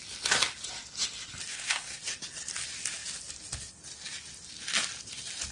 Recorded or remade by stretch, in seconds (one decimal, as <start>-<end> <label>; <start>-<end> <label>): 0.0-1.5 recorded; 1.5-2.0 remade; 2.0-5.5 recorded